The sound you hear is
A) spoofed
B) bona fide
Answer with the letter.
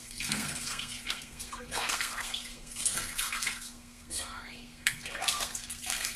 A